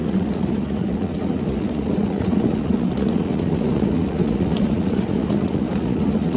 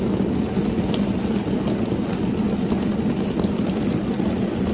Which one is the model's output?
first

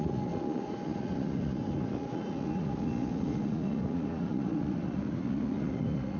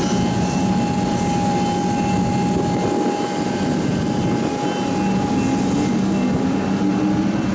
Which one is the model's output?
first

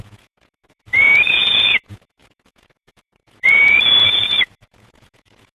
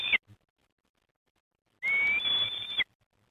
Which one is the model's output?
first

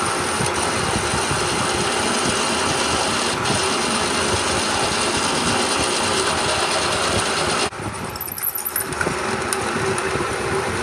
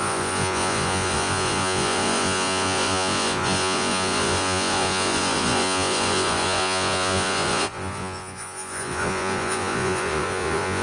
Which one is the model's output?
second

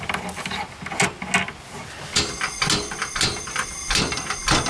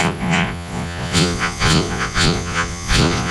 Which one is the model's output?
second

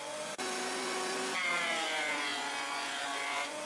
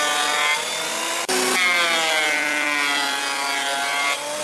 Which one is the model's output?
first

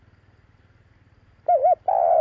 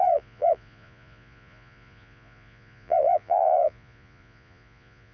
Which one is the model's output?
second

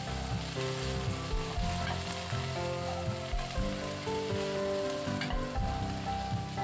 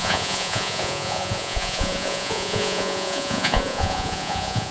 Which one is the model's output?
second